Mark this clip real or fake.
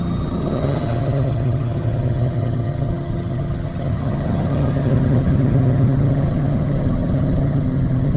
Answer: fake